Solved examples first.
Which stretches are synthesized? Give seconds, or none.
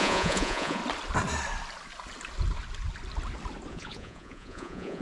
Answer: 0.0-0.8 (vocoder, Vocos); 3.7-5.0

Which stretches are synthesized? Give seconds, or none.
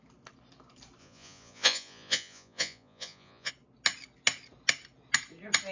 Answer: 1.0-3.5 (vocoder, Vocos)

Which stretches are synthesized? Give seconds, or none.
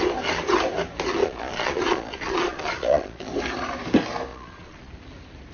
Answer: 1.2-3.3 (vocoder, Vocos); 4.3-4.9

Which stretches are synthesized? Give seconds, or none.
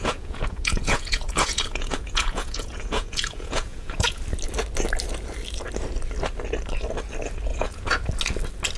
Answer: 0.0-4.2 (vocoder, Vocos); 7.5-8.1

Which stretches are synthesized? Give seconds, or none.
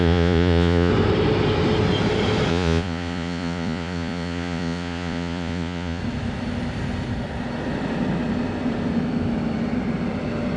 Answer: 0.0-0.9 (vocoder, Vocos); 2.5-6.0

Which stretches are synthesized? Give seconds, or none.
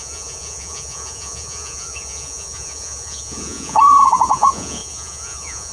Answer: 0.0-5.7 (vocoder, Vocos)